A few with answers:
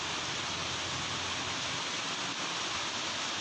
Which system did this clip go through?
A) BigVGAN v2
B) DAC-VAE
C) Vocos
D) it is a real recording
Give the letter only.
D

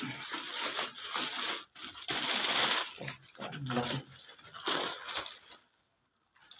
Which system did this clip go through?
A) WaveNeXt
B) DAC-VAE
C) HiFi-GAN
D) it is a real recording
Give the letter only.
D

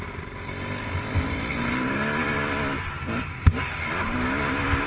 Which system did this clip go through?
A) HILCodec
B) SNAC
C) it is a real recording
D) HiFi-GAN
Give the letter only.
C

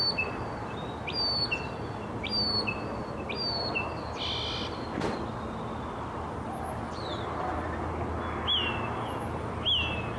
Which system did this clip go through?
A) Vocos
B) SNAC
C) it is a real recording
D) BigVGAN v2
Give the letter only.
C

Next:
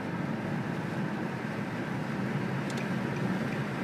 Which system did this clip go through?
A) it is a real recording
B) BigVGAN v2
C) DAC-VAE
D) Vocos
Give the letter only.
A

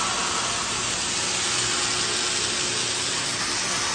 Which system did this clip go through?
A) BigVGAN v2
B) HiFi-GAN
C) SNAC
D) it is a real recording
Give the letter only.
D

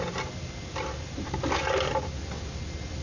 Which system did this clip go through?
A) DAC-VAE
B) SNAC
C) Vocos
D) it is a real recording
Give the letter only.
D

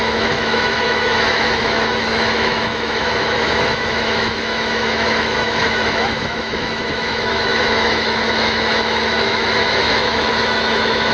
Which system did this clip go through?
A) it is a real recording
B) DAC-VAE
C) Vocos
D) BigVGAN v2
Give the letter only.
B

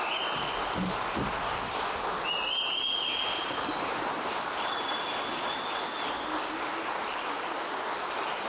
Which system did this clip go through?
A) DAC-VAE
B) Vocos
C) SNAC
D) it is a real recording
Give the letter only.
D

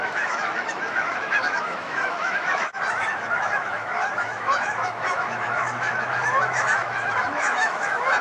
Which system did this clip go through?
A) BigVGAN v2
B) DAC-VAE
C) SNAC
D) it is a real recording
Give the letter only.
B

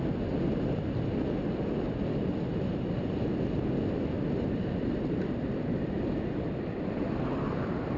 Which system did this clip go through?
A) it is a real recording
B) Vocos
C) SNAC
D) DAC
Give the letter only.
A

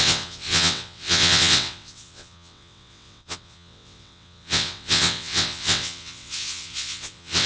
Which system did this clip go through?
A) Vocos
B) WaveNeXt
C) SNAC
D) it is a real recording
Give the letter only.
B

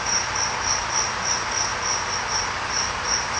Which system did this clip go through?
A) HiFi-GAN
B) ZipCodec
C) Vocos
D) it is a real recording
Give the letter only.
D